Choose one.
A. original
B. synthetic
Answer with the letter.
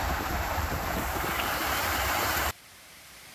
B